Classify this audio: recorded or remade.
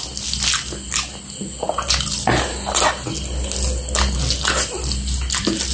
recorded